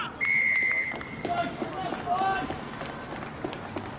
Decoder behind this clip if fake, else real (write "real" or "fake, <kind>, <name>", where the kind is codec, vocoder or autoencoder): real